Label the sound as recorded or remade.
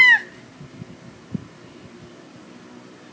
recorded